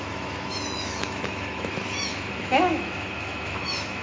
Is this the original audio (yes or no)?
no